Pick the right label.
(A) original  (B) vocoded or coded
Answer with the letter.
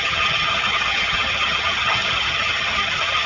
B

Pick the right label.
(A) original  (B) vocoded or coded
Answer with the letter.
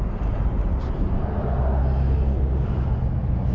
A